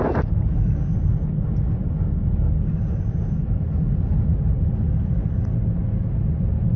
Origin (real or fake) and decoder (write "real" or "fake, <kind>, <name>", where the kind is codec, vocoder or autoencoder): real